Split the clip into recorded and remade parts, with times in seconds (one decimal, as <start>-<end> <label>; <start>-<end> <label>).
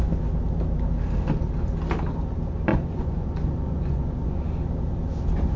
0.0-2.7 recorded; 2.7-4.6 remade; 4.6-5.6 recorded